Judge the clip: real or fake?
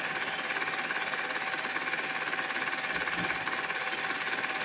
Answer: real